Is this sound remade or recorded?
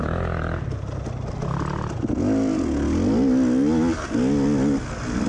recorded